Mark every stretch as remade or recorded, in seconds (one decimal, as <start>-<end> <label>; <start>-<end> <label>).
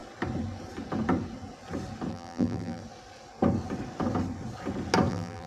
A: 0.0-2.1 recorded; 2.1-2.8 remade; 2.8-5.1 recorded; 5.1-5.5 remade